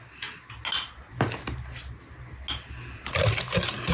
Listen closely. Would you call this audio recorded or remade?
recorded